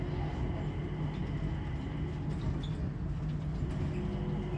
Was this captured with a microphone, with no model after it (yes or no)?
yes